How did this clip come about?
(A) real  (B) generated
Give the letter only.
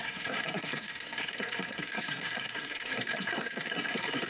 B